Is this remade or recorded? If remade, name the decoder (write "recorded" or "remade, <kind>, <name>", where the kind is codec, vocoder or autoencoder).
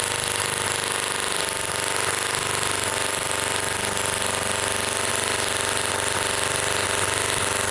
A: recorded